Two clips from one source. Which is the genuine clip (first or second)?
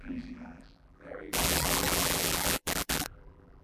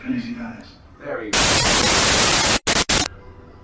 second